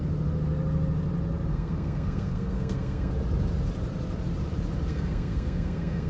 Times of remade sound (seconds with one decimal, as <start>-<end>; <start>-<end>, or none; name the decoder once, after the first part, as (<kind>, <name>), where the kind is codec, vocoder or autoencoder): 1.5-3.1 (codec, SNAC); 4.9-6.1